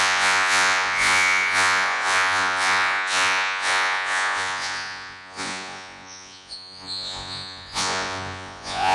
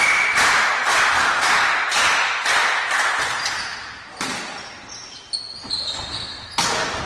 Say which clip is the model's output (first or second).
first